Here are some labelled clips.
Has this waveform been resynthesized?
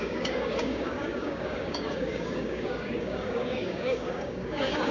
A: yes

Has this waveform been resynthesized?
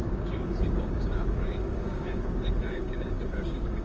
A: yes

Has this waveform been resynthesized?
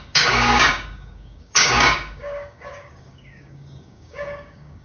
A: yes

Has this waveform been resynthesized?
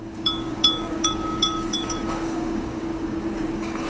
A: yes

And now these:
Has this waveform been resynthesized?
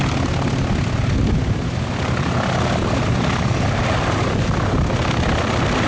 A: no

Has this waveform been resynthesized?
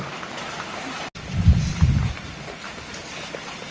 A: no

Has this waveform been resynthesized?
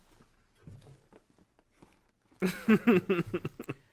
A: no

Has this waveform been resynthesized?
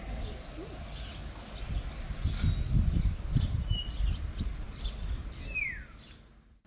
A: no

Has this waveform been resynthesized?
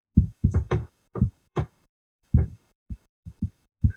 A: yes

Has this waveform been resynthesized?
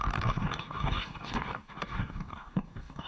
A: yes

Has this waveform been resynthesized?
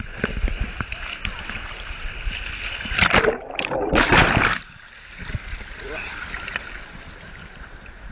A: no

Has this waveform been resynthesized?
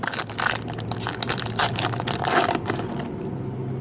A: no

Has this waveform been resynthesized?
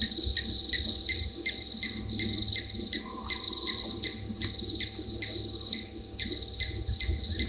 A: no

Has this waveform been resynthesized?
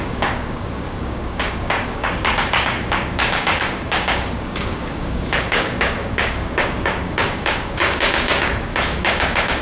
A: yes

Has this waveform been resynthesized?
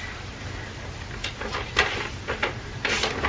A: no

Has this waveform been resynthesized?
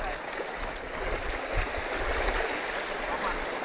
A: no